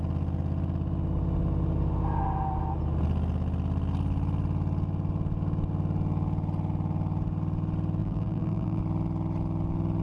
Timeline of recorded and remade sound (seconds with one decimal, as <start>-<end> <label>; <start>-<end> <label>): 0.0-8.0 recorded; 8.0-8.8 remade; 8.8-10.0 recorded